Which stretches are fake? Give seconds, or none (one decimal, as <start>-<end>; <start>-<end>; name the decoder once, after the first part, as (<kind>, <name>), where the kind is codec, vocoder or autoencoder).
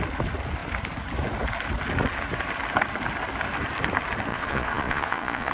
4.3-5.5 (vocoder, Vocos)